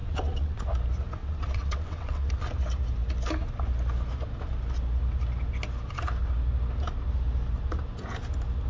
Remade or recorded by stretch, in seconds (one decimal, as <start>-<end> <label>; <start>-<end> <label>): 0.0-0.6 remade; 0.6-1.2 recorded; 1.2-2.3 remade; 2.3-8.7 recorded